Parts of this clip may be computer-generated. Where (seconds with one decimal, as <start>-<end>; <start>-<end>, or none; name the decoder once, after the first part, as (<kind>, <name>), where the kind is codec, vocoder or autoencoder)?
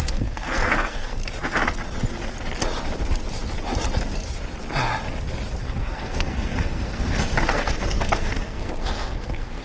0.0-1.2 (codec, SNAC); 5.6-9.6